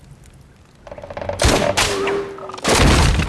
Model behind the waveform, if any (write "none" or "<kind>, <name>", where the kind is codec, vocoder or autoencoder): none